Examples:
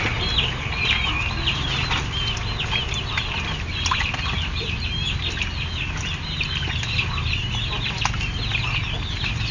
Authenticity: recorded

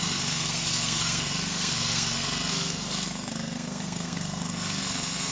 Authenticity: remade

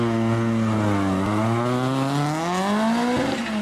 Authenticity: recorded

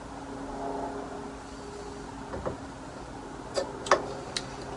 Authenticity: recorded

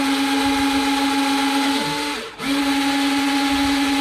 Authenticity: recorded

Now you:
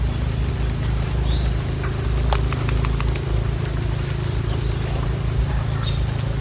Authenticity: recorded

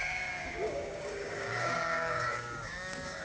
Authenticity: remade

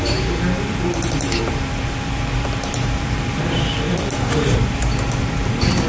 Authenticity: remade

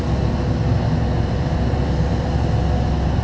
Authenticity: recorded